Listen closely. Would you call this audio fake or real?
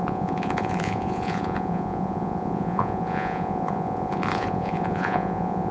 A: fake